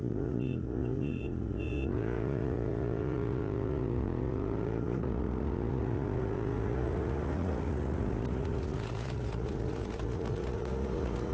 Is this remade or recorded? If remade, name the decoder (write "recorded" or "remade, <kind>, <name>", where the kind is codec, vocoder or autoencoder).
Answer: remade, vocoder, Vocos